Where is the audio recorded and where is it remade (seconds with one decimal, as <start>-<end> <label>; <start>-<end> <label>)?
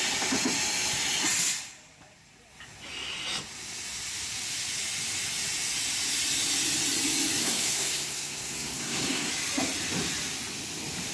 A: 0.0-7.4 recorded; 7.4-9.3 remade; 9.3-11.1 recorded